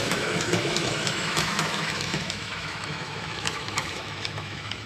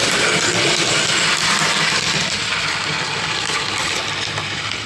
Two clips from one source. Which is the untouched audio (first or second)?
second